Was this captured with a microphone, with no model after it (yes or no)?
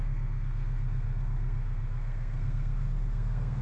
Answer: no